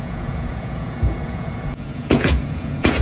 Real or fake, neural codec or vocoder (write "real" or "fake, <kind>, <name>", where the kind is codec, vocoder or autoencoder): fake, vocoder, Vocos